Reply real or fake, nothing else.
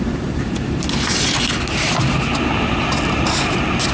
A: real